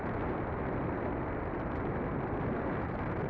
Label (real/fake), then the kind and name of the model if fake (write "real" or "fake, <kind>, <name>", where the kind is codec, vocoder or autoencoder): real